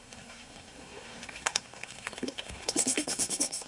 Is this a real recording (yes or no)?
no